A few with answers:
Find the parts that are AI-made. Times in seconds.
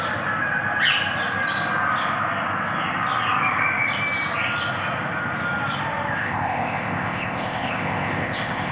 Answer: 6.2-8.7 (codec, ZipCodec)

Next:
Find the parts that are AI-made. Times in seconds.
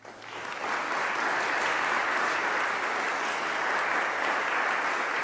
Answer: none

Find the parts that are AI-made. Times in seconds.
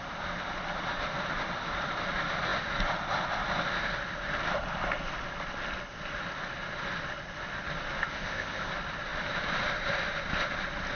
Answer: 8.1-8.7 (codec, ZipCodec)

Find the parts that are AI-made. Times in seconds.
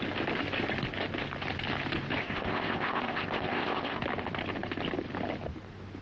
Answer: 2.2-4.0 (codec, ZipCodec)